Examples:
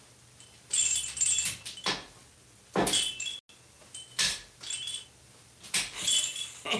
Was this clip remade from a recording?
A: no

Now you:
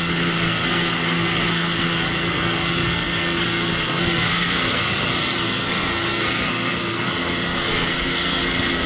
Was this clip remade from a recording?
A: yes